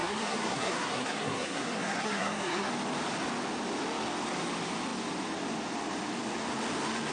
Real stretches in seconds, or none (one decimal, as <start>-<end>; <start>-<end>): 2.7-7.1